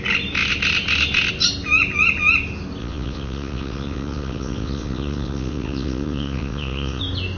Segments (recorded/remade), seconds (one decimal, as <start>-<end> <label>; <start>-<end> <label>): 0.0-2.8 recorded; 2.8-7.0 remade; 7.0-7.4 recorded